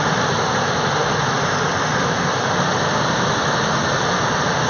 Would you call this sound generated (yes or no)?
no